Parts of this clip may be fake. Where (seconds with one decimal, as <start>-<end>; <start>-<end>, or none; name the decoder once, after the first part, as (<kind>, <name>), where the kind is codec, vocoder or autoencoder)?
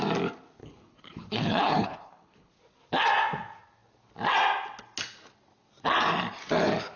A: 0.6-2.5 (codec, HILCodec)